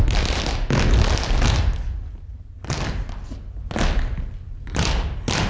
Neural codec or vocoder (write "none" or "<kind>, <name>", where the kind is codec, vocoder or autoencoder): none